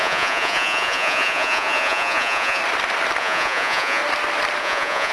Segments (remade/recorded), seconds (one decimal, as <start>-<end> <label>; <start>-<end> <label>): 0.0-2.6 remade; 2.6-3.2 recorded; 3.2-4.0 remade; 4.0-4.6 recorded; 4.6-5.1 remade